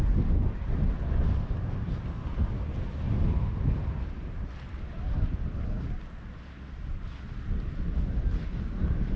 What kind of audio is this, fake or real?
real